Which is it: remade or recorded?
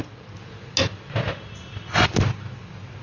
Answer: recorded